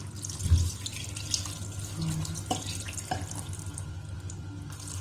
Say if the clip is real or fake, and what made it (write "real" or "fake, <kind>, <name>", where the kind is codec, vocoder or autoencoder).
real